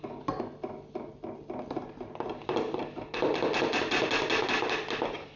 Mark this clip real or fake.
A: real